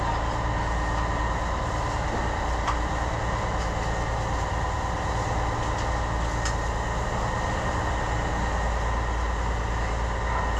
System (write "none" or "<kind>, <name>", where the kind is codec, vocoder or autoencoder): none